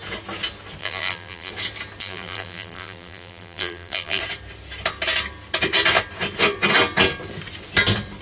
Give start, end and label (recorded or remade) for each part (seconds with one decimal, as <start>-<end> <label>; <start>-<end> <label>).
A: 0.0-0.8 recorded; 0.8-1.5 remade; 1.5-2.0 recorded; 2.0-4.2 remade; 4.2-8.2 recorded